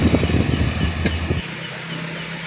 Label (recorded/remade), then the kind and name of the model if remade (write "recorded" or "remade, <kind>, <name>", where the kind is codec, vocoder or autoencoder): recorded